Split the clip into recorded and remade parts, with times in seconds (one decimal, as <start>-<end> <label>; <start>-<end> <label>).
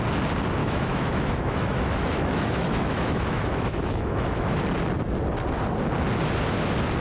0.0-0.6 recorded; 0.6-4.6 remade; 4.6-7.0 recorded